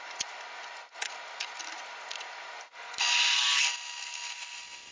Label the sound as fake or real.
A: real